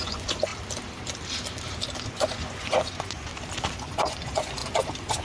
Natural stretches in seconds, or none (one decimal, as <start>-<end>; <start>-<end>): 0.5-2.0; 3.3-3.8